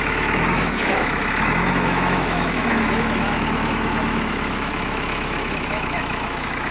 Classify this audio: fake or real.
fake